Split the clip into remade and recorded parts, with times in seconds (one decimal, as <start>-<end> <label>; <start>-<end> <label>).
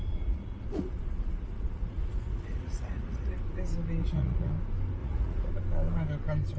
0.0-3.3 remade; 3.3-4.0 recorded; 4.0-4.5 remade; 4.5-5.0 recorded; 5.0-5.5 remade; 5.5-6.6 recorded